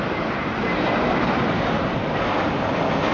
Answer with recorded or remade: recorded